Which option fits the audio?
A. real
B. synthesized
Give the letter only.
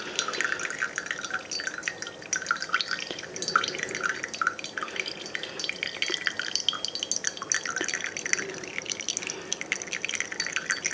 A